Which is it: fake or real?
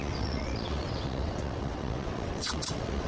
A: fake